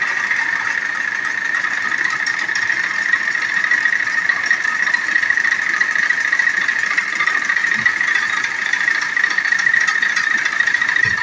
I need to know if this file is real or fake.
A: fake